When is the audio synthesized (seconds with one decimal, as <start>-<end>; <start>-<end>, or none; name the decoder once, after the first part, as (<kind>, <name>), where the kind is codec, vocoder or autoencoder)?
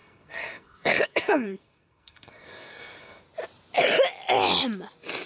0.0-3.2 (codec, SNAC)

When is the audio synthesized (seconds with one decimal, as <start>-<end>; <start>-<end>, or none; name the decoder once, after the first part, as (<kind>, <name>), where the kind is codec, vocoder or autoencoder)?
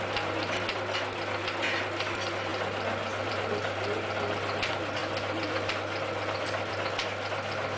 none